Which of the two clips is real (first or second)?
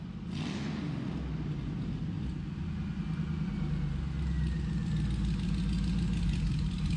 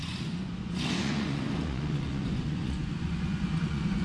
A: first